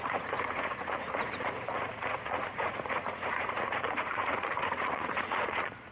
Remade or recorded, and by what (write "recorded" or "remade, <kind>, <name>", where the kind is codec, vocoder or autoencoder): remade, vocoder, Vocos